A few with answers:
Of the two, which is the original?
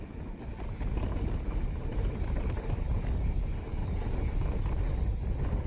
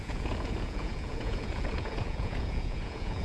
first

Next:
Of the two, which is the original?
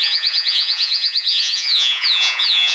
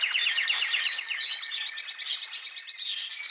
second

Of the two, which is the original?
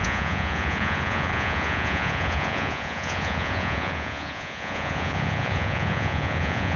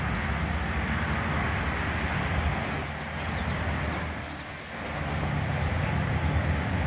second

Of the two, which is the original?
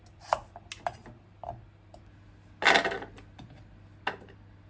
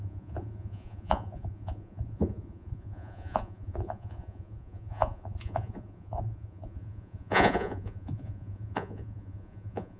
first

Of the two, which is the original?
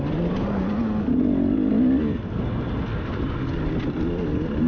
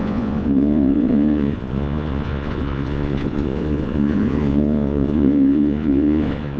first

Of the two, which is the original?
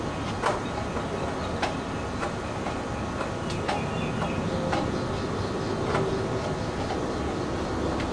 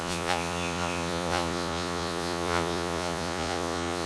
first